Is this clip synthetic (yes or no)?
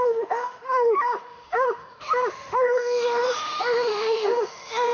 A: yes